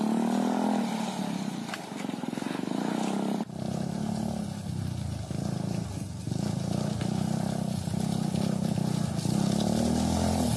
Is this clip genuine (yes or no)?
yes